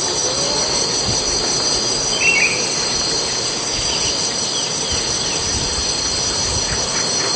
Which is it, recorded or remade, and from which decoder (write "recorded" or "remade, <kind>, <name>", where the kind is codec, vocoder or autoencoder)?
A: recorded